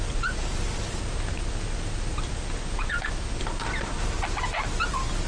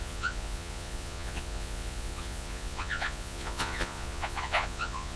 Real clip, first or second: first